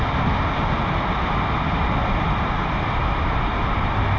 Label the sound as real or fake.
real